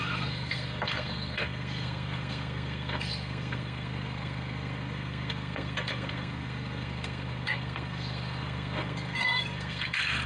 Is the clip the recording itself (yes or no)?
no